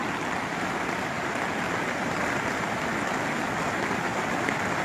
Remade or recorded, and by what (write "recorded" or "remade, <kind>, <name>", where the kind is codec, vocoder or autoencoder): recorded